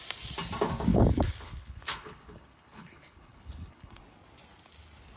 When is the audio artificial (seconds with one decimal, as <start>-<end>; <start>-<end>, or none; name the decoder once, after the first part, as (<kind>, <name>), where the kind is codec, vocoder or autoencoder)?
0.9-4.0 (codec, HILCodec)